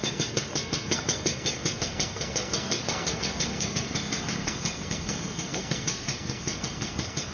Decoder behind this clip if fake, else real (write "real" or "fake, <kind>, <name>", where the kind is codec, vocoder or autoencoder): fake, codec, SNAC